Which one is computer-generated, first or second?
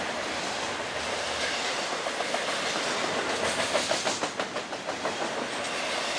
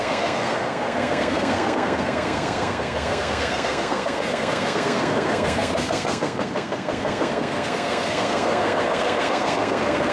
second